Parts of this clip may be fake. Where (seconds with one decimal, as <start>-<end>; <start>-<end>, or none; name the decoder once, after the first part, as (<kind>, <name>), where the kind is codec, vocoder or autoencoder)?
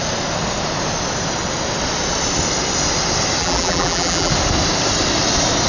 3.4-4.3 (vocoder, BigVGAN v2)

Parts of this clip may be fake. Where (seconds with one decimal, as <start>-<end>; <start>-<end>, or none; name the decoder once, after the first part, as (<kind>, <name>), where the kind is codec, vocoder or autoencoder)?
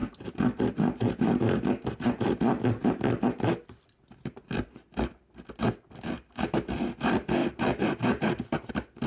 7.4-8.7 (vocoder, BigVGAN v2)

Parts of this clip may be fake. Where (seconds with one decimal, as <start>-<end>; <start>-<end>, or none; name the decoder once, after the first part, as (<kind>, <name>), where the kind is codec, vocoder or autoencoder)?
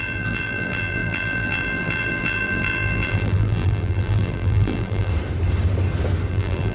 0.0-5.1 (vocoder, BigVGAN v2); 6.3-6.7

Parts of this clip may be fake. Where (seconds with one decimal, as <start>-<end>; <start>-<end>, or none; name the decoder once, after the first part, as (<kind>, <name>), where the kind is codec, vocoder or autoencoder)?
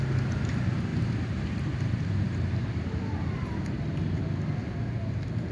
0.9-4.2 (vocoder, BigVGAN v2)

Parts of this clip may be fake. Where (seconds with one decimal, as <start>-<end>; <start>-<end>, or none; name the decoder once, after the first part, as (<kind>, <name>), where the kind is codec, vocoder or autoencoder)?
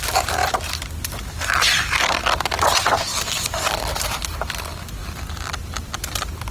5.0-5.9 (vocoder, BigVGAN v2)